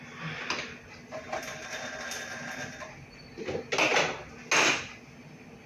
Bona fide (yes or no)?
yes